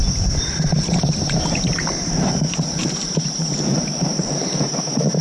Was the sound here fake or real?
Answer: fake